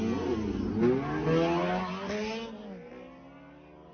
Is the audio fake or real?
real